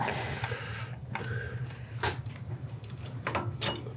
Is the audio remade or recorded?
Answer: recorded